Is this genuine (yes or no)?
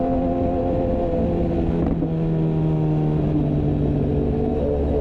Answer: yes